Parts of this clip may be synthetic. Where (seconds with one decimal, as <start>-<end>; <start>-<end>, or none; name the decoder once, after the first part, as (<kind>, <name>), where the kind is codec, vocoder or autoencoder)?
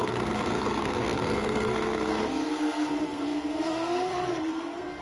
0.0-5.0 (codec, SNAC)